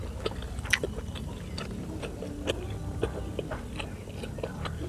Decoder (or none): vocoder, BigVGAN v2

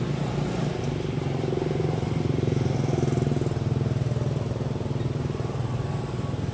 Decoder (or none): none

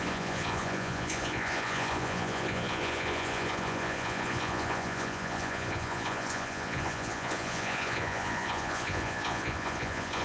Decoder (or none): vocoder, Vocos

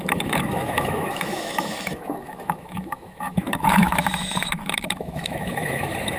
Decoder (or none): autoencoder, DAC-VAE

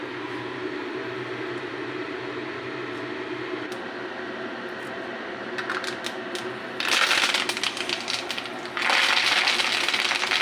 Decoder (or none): none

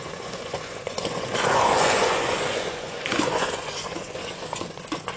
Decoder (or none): vocoder, Vocos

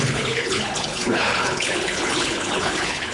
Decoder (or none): codec, HILCodec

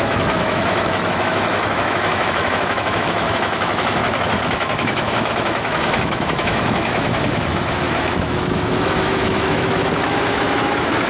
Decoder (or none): autoencoder, DAC-VAE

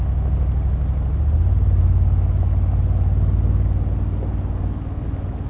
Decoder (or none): none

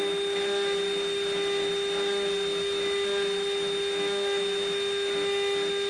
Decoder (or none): none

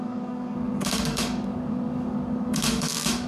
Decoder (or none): codec, DAC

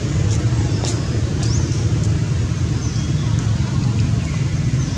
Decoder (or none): none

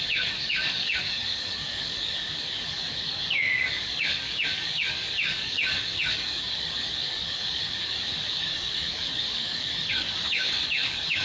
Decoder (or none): codec, DAC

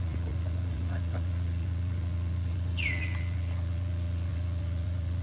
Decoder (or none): vocoder, Vocos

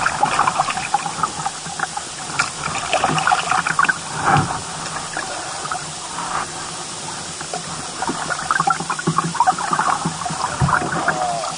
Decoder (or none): none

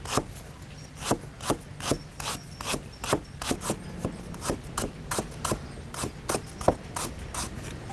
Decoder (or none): none